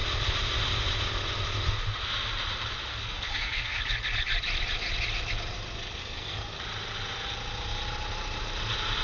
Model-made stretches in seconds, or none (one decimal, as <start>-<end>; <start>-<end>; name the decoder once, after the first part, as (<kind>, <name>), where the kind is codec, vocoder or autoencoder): 2.9-3.8 (codec, SNAC); 6.0-6.6